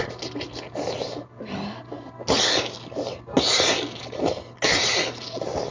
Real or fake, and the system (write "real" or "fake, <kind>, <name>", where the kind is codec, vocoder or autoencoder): real